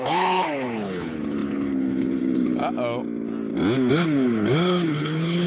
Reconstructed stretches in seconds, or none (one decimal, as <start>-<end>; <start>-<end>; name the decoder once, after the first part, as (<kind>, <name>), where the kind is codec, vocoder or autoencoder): 0.0-2.6 (codec, HILCodec); 3.9-5.5